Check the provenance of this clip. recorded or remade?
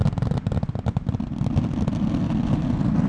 recorded